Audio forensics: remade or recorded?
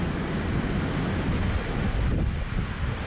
recorded